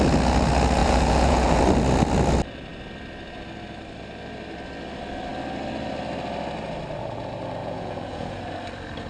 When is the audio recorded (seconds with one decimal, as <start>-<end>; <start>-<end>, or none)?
0.0-0.8; 1.6-7.6; 8.4-9.1